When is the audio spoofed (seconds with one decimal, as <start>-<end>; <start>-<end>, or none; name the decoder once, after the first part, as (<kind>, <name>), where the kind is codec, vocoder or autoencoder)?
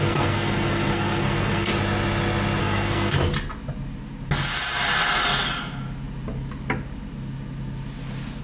0.0-1.7 (codec, SNAC); 2.6-3.2